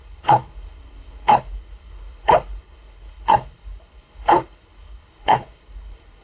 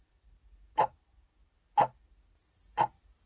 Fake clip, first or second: first